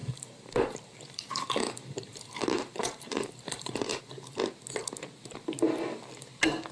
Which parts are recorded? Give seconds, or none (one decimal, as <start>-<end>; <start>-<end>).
4.0-6.7